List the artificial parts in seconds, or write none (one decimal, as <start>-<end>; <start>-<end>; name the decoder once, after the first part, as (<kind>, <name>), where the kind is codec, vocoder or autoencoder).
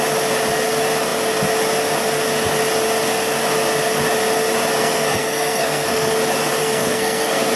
4.8-6.1 (codec, SNAC); 6.6-7.6